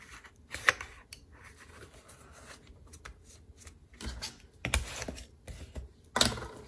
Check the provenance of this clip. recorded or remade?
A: recorded